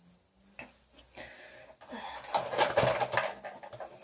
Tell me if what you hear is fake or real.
real